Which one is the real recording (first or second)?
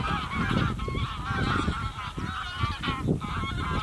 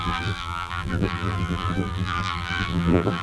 first